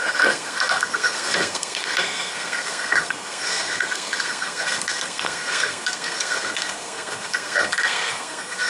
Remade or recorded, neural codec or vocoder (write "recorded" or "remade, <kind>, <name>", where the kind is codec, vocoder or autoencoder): remade, codec, SNAC